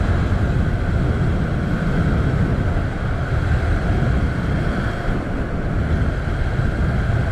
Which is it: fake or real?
real